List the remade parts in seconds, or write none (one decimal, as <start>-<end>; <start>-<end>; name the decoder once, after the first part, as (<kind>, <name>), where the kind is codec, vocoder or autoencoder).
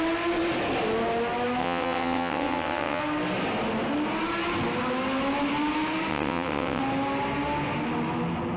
1.6-3.0 (vocoder, WaveNeXt); 6.1-6.8